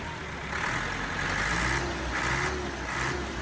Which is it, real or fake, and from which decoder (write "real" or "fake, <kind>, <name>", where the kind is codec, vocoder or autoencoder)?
real